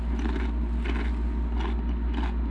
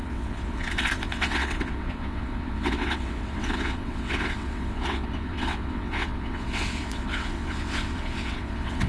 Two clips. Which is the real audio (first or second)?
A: first